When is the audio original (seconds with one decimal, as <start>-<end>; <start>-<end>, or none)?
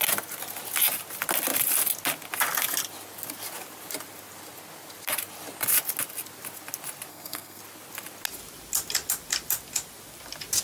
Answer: 0.0-7.1; 7.6-10.6